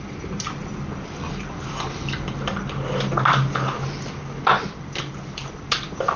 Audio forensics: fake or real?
real